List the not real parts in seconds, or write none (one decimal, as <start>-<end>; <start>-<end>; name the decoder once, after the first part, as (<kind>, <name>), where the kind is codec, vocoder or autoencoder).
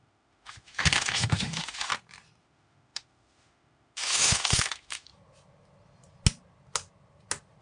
0.0-1.9 (autoencoder, DAC-VAE); 2.4-5.1